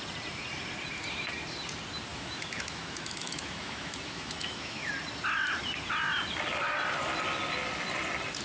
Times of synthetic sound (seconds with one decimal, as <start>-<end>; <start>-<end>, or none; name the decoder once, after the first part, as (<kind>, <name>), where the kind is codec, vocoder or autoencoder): 2.1-4.9 (autoencoder, DAC-VAE)